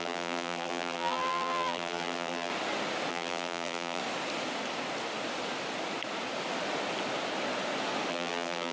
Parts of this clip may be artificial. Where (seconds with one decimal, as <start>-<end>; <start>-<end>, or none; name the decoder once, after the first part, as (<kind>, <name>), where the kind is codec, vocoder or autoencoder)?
0.0-2.5 (vocoder, BigVGAN v2); 3.1-4.0; 8.1-8.7